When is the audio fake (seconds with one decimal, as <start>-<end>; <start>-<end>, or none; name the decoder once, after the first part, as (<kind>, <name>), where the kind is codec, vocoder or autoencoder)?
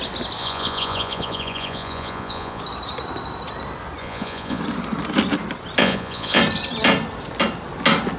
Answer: 0.4-2.6 (vocoder, Vocos); 4.0-4.6; 5.8-6.4